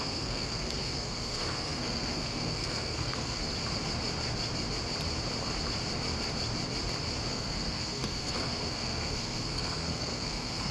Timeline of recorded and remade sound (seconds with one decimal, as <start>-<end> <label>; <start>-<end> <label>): 0.0-3.4 remade; 3.4-7.3 recorded; 7.3-10.7 remade